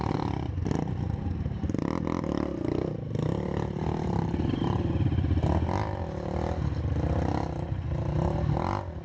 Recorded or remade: recorded